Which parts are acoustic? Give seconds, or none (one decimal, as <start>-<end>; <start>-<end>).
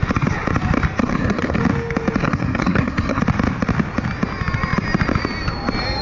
0.0-1.0; 1.6-2.2; 3.2-6.0